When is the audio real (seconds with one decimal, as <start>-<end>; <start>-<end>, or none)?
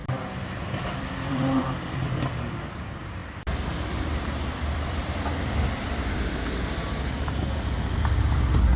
1.6-3.2; 6.6-8.8